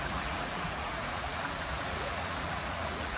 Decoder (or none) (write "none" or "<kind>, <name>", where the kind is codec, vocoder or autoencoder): vocoder, Vocos